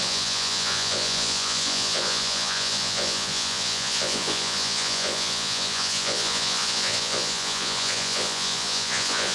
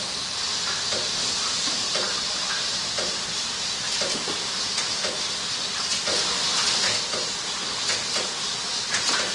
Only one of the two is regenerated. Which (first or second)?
first